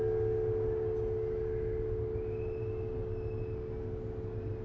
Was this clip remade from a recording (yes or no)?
no